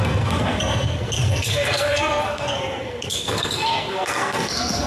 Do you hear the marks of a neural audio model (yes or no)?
yes